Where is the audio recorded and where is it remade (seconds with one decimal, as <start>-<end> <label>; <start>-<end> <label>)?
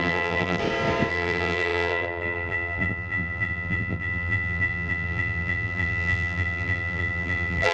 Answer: 0.0-0.6 remade; 0.6-1.1 recorded; 1.1-7.7 remade